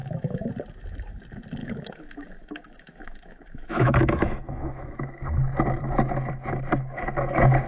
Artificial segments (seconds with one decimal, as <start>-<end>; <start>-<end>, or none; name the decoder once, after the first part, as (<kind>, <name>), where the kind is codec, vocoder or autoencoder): 0.0-0.5 (autoencoder, DAC-VAE); 1.6-5.1